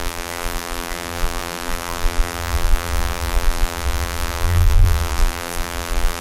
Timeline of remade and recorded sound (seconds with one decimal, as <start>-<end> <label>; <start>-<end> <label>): 0.0-6.2 remade